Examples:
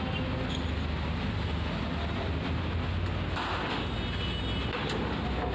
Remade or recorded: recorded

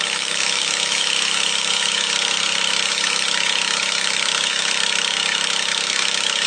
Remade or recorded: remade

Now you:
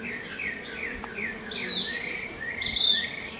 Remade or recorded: recorded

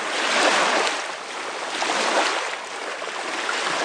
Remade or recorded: recorded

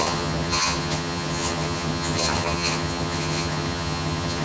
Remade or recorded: remade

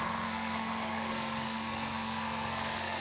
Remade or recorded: remade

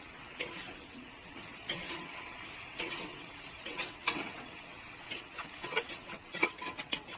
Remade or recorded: remade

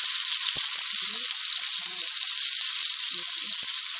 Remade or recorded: recorded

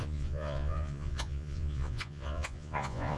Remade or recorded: remade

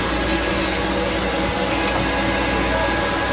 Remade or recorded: recorded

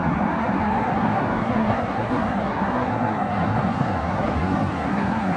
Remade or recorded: remade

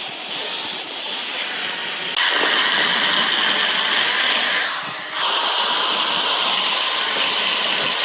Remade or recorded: recorded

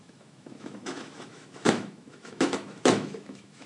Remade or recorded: remade